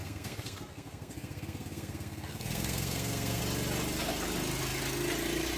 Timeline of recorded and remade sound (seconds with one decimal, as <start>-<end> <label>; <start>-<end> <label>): 0.0-3.4 remade; 3.4-5.6 recorded